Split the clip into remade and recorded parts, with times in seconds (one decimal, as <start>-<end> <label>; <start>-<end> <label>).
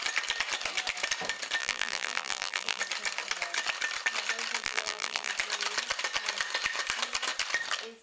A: 0.0-1.6 recorded; 1.6-2.8 remade; 2.8-4.6 recorded; 4.6-5.3 remade; 5.3-8.0 recorded